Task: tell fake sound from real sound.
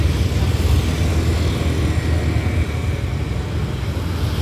real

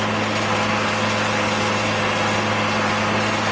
real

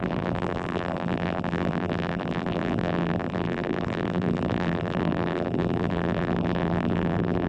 fake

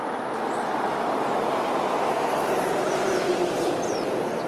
real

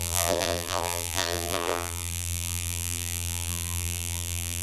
fake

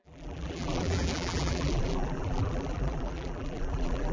fake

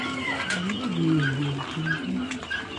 real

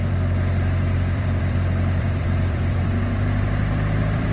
fake